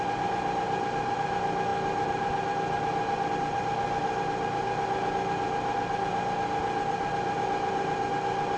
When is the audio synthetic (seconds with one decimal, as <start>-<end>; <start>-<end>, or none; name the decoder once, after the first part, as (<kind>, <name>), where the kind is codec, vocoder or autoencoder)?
none